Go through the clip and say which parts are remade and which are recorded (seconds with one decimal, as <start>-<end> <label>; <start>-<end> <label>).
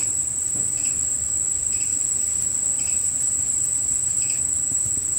0.0-5.2 recorded